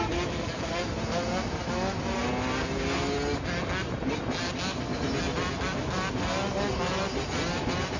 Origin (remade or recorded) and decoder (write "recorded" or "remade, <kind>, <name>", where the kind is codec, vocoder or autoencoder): recorded